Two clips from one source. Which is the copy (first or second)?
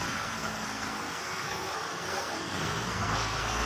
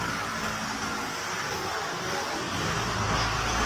first